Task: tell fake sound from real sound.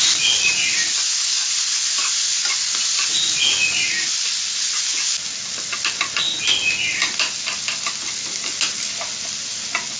real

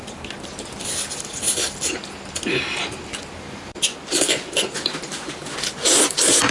real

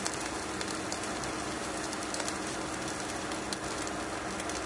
real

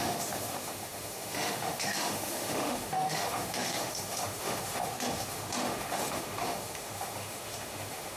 fake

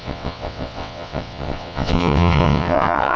fake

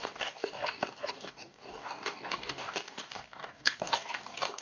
fake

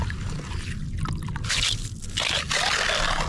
real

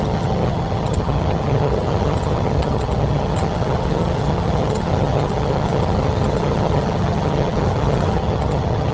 fake